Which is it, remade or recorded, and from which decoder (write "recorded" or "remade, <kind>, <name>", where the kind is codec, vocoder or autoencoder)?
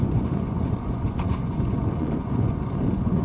remade, vocoder, Vocos